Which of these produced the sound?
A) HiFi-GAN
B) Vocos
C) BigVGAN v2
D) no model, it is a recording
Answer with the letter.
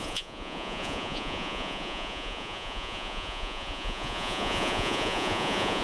B